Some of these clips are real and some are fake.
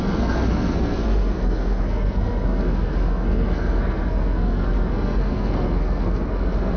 fake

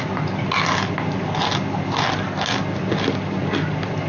real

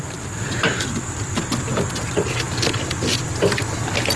real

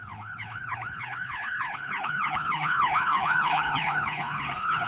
fake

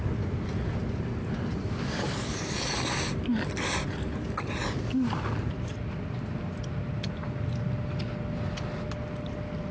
real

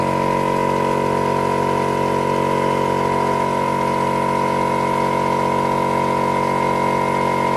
real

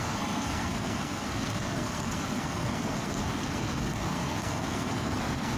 fake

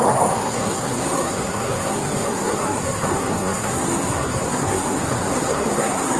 fake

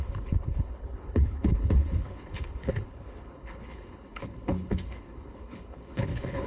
fake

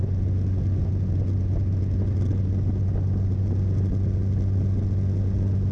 real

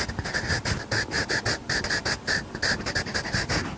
real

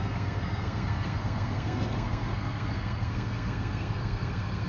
fake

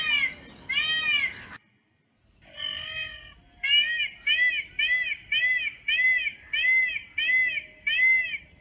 real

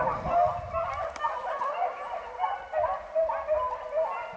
real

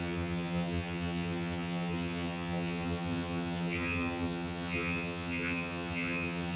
fake